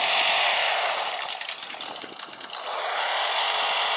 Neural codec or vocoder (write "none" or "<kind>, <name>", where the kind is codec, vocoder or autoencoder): none